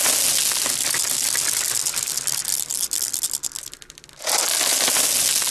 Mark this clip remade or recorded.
recorded